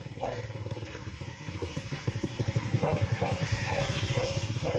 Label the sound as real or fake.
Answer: fake